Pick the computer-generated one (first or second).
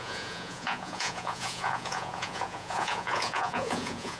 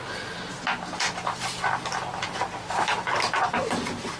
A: first